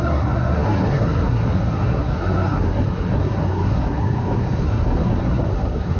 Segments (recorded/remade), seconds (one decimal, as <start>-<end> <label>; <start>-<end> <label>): 0.0-6.0 remade